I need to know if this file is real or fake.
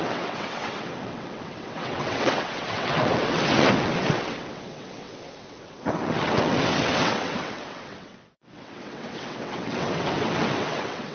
fake